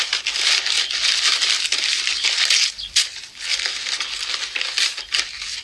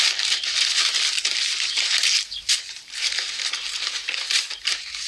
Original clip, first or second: first